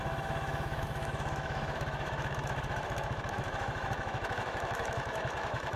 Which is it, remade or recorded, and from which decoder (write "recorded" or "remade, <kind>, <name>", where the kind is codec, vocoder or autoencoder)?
remade, autoencoder, DAC-VAE